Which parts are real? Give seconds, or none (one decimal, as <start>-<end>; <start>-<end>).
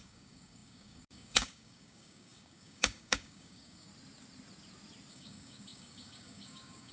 3.9-5.1